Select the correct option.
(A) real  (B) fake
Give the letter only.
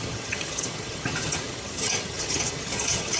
B